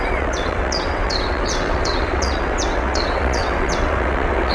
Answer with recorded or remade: remade